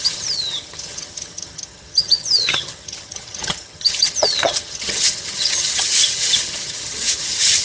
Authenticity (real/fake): fake